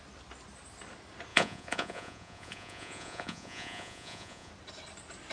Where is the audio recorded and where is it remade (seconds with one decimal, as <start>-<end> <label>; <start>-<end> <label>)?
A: 0.0-1.3 recorded; 1.3-4.5 remade; 4.5-5.3 recorded